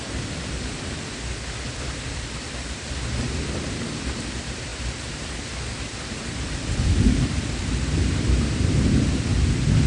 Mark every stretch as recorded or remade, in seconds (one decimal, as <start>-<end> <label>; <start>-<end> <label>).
0.0-9.3 remade; 9.3-9.9 recorded